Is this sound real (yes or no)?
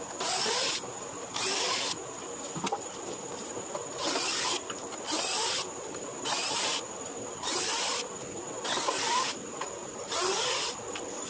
yes